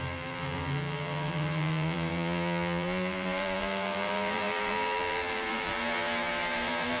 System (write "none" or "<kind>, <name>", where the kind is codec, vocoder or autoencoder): vocoder, BigVGAN v2